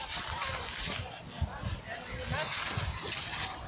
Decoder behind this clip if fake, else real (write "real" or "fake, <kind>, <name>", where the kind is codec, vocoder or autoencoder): real